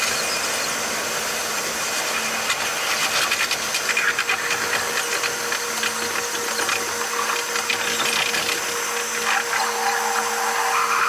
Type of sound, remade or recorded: recorded